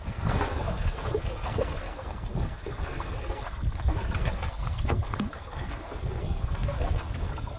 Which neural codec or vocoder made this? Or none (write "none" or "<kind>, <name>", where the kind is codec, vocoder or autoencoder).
codec, SNAC